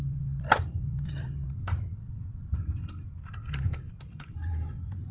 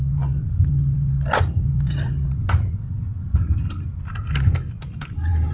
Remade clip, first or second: first